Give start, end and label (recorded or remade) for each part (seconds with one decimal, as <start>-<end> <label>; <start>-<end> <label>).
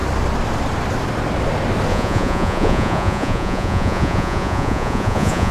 0.0-1.9 recorded; 1.9-5.5 remade